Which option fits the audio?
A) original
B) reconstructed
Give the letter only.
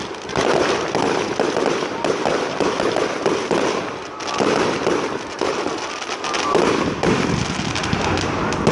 A